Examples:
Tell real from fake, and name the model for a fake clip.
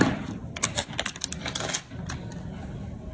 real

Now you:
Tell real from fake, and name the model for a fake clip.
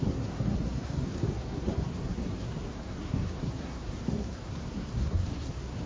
fake, codec, SNAC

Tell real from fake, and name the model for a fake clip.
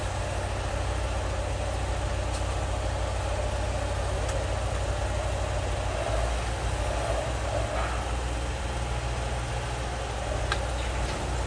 real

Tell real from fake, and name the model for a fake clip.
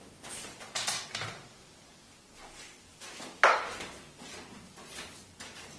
real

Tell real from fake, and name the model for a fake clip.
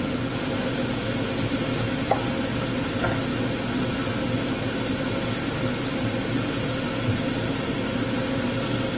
real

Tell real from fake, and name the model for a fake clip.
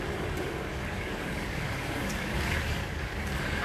fake, codec, DAC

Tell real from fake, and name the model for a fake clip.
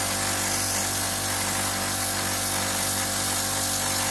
real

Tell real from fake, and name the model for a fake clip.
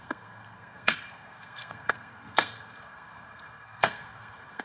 fake, codec, SNAC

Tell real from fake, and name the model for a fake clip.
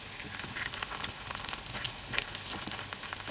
real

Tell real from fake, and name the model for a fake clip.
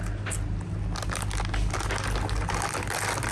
real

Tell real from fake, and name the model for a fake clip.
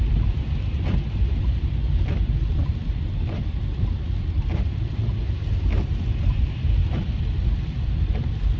fake, vocoder, BigVGAN v2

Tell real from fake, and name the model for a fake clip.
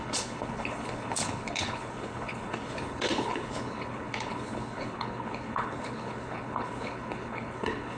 fake, codec, HILCodec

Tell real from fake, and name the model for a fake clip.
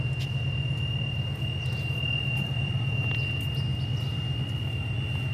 real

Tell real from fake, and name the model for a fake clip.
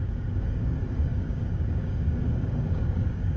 fake, codec, DAC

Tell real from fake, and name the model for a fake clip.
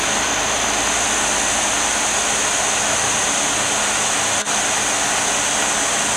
real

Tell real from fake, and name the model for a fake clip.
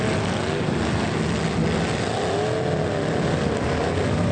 real